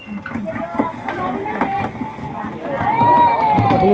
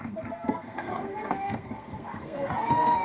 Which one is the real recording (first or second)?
first